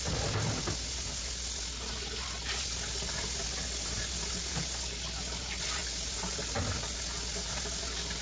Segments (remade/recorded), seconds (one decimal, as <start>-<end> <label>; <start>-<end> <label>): 0.0-8.2 recorded